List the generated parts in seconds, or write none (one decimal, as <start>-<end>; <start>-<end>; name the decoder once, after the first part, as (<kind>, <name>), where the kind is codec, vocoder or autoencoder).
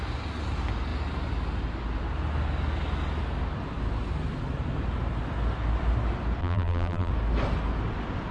6.4-7.1 (vocoder, BigVGAN v2)